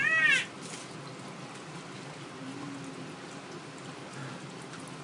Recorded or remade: recorded